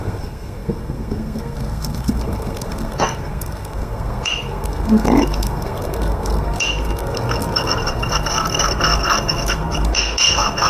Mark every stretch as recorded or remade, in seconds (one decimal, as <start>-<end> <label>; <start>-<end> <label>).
0.0-10.7 remade